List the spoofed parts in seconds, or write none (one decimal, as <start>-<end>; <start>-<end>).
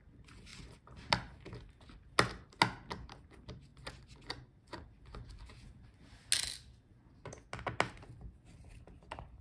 none